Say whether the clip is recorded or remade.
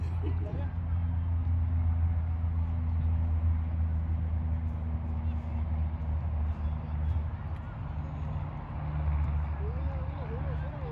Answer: recorded